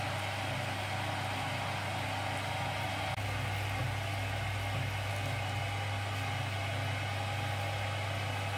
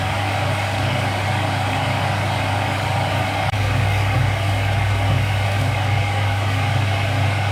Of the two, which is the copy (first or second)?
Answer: second